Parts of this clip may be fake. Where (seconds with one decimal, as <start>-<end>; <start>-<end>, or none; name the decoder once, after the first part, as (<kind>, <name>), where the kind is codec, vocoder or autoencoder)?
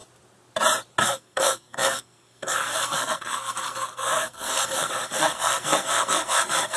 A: 1.0-6.8 (codec, SNAC)